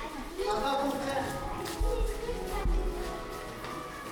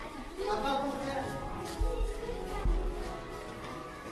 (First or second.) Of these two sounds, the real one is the first